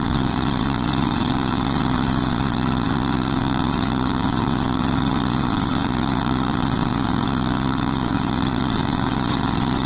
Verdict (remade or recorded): remade